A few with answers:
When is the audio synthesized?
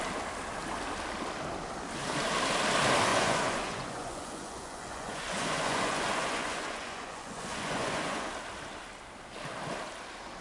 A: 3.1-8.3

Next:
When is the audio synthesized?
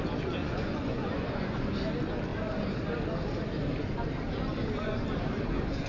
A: 0.4-1.8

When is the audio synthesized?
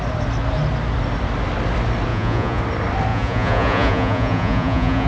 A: 2.1-2.6; 3.1-5.1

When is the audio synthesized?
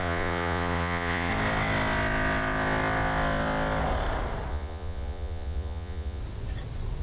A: 0.0-1.3; 4.5-6.2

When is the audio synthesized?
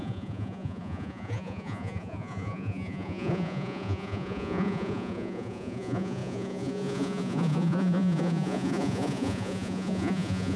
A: 0.0-10.6